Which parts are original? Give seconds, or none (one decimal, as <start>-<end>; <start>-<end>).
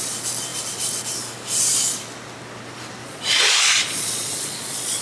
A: 0.0-3.0